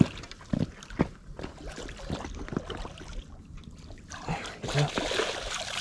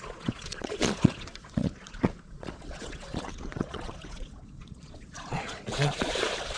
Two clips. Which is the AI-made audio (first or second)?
second